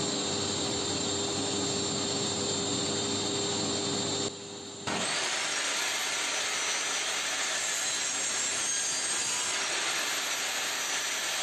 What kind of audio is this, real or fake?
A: real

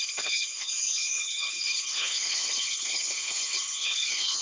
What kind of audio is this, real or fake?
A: fake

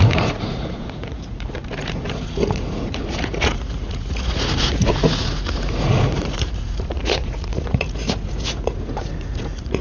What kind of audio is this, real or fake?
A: fake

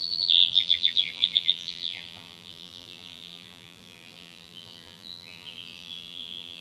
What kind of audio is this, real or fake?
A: fake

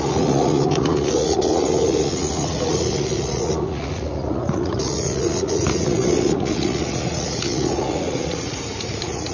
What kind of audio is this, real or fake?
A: fake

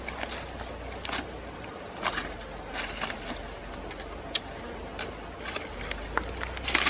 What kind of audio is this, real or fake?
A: real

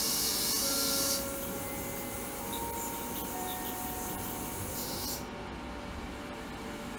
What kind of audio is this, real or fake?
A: real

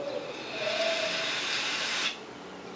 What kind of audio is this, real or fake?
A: real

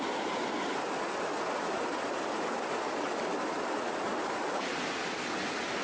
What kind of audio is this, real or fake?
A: real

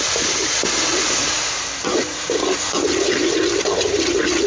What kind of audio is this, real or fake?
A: real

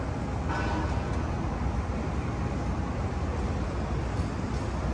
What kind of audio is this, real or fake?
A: real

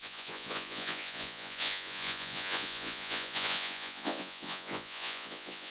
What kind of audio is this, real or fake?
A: fake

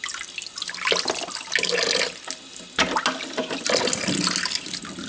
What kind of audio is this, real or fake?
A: real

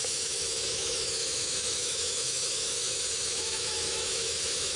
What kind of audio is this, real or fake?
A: fake